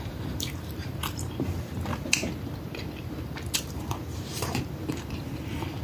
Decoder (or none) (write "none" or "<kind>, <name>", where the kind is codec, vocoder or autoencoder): vocoder, BigVGAN v2